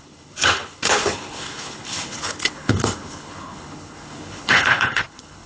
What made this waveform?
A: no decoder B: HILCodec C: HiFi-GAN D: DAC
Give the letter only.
B